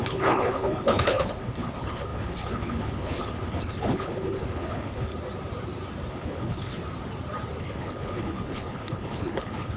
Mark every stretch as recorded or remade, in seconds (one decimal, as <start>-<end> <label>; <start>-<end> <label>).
0.0-5.1 remade; 5.1-6.1 recorded; 6.1-6.8 remade; 6.8-7.6 recorded; 7.6-9.8 remade